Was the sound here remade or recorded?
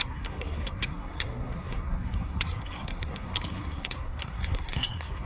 remade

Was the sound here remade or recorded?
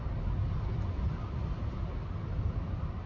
recorded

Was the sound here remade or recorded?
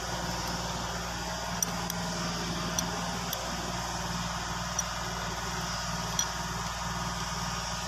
recorded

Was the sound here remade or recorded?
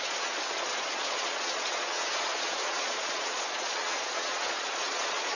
remade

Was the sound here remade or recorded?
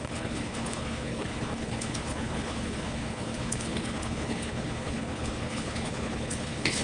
remade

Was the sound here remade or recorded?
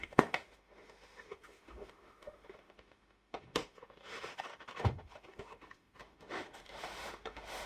remade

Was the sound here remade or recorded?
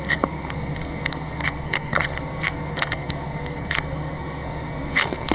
remade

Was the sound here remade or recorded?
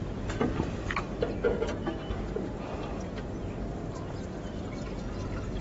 recorded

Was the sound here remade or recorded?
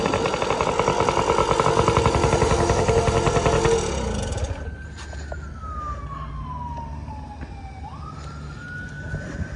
recorded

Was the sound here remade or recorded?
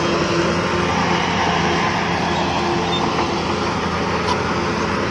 recorded